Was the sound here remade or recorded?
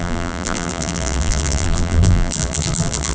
remade